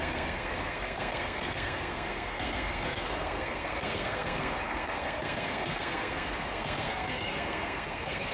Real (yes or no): no